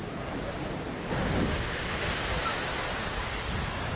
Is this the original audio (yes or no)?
yes